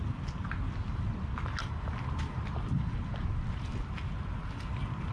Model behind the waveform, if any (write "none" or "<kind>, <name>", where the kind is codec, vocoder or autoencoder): none